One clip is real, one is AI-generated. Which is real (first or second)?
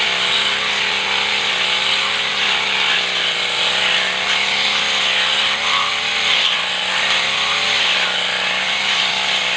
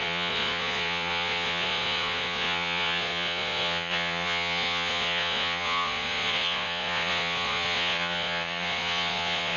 first